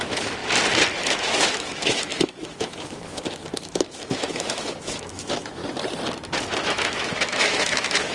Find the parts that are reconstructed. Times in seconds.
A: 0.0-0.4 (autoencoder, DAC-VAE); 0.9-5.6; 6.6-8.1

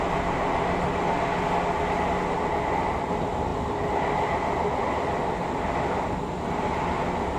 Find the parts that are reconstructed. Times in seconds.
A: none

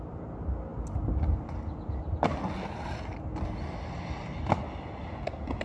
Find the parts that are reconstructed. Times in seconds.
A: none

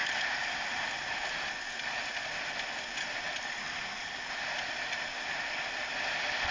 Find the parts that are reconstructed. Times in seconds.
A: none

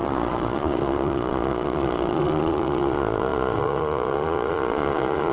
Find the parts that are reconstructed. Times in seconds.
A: 0.0-5.3 (vocoder, Vocos)

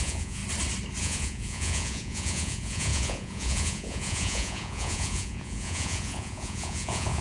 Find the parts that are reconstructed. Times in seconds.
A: 0.0-0.4 (vocoder, Vocos); 1.0-7.2